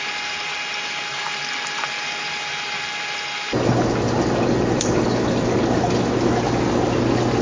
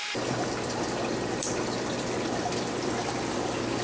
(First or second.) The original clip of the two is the first